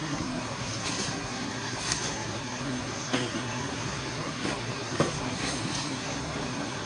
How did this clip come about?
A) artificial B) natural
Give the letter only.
A